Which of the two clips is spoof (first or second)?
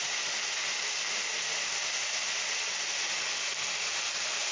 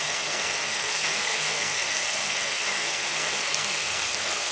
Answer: second